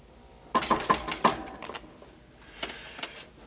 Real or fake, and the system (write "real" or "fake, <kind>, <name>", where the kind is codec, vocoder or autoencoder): real